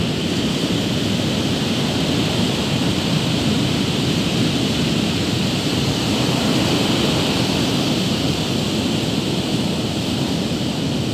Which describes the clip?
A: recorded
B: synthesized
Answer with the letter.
A